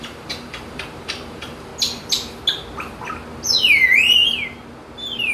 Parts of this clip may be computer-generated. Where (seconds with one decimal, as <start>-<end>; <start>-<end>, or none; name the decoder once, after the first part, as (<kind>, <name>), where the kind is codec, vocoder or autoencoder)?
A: 0.0-1.7 (vocoder, BigVGAN v2)

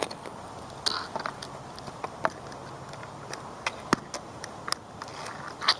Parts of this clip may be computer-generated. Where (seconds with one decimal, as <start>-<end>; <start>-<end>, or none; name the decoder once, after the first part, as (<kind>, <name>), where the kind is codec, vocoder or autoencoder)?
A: none

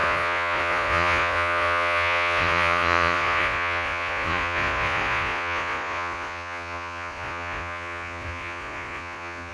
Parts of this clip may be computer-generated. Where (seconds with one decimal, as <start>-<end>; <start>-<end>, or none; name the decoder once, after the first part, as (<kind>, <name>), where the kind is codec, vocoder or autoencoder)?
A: 0.0-9.5 (vocoder, Vocos)

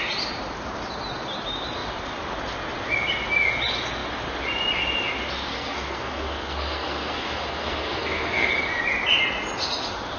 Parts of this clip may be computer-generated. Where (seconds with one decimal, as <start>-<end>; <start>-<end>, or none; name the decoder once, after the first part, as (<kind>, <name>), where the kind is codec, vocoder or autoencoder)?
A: 5.5-8.5 (codec, SNAC)

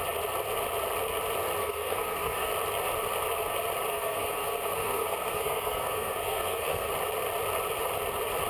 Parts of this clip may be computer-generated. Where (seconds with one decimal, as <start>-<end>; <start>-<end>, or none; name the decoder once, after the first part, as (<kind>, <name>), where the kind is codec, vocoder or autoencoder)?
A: 1.6-2.5 (codec, SNAC); 3.9-6.9

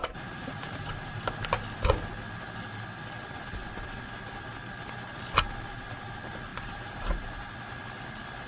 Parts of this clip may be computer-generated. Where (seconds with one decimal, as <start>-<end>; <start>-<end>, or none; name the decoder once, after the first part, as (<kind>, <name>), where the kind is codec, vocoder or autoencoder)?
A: 0.0-1.2 (vocoder, BigVGAN v2); 6.5-7.5

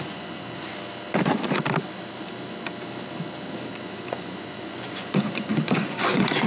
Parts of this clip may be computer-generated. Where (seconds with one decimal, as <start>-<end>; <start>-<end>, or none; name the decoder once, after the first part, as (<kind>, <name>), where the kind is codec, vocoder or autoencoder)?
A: 0.0-0.7 (vocoder, Vocos); 3.7-6.5

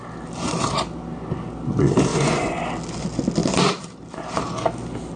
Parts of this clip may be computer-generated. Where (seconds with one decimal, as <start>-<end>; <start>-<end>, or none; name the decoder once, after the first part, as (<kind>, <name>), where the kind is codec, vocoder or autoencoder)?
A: 2.1-2.6 (vocoder, Vocos)